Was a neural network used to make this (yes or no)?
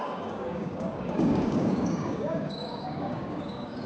yes